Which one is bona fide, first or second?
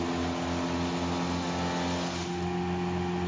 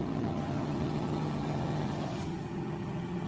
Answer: first